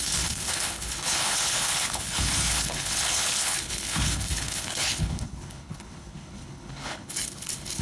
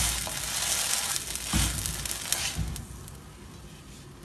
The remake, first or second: first